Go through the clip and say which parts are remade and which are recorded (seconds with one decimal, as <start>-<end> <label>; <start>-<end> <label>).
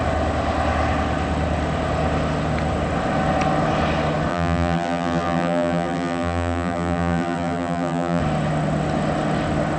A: 0.0-4.3 recorded; 4.3-8.2 remade; 8.2-9.8 recorded